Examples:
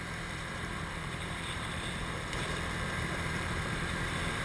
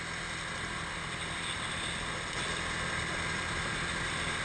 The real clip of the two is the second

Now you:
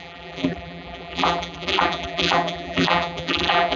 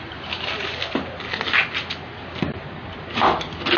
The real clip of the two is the second